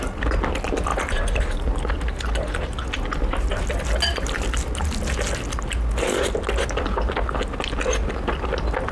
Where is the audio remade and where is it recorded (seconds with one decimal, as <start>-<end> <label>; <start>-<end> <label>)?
0.0-0.9 recorded; 0.9-1.4 remade; 1.4-8.9 recorded